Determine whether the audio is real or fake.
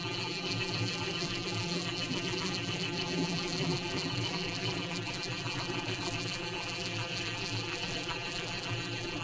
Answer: fake